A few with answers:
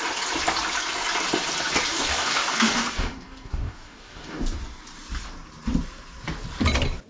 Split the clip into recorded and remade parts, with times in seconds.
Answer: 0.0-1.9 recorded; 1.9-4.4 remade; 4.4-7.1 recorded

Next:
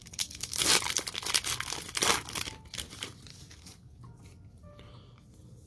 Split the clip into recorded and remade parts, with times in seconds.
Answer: 0.0-0.6 remade; 0.6-3.3 recorded; 3.3-4.2 remade; 4.2-5.7 recorded

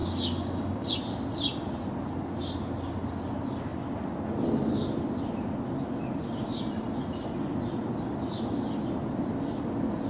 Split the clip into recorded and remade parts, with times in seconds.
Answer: 0.0-0.9 remade; 0.9-10.1 recorded

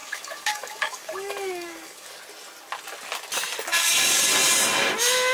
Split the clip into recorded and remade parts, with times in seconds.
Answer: 0.0-2.2 remade; 2.2-3.7 recorded; 3.7-4.3 remade; 4.3-5.3 recorded

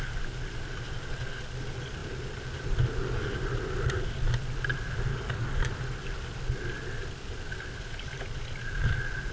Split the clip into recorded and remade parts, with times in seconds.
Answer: 0.0-5.1 recorded; 5.1-5.7 remade; 5.7-9.3 recorded

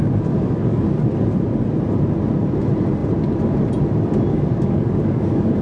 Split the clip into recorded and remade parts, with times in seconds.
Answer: 0.0-1.1 remade; 1.1-4.3 recorded; 4.3-5.6 remade

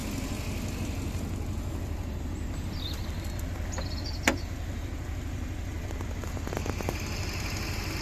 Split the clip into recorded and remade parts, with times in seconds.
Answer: 0.0-8.0 recorded

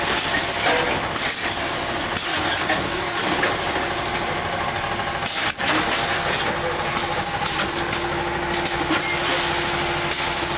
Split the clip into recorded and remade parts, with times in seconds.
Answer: 0.0-2.3 recorded; 2.3-3.5 remade; 3.5-10.6 recorded